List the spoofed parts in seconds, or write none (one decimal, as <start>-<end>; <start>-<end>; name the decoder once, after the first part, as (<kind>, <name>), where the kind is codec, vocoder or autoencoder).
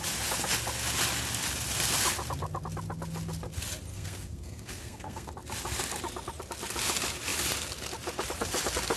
3.9-5.3 (codec, SNAC)